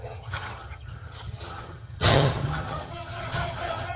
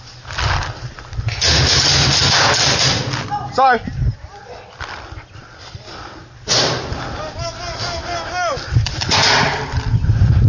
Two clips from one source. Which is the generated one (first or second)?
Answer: first